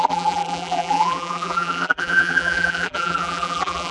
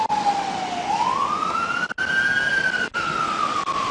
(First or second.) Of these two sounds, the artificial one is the first